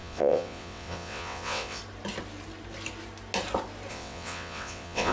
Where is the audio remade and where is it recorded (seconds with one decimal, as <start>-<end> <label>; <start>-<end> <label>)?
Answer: 0.0-1.8 remade; 1.8-3.9 recorded; 3.9-5.1 remade